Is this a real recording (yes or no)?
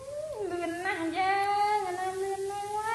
yes